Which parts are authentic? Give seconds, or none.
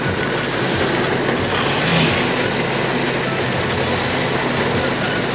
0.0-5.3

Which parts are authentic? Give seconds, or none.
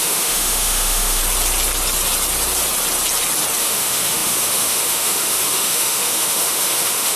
1.2-3.6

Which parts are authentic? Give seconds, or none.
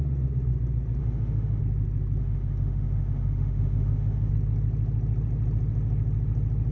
0.0-1.0; 1.6-2.2; 4.3-6.7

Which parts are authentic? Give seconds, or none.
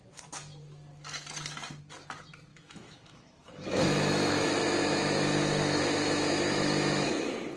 0.0-2.5; 7.1-7.6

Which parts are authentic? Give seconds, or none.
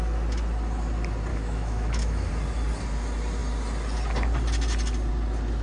0.0-1.3; 2.3-5.6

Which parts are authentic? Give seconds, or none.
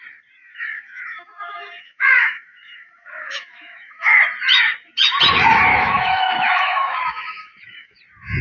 0.0-0.4; 4.2-5.7; 8.0-8.4